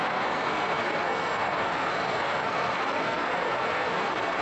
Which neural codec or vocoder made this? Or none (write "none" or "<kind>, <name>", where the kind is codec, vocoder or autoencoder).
codec, SNAC